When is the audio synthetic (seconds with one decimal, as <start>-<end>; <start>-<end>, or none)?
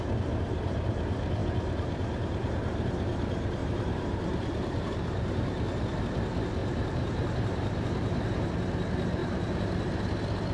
1.4-2.3; 3.6-6.0; 6.6-8.5; 9.2-10.0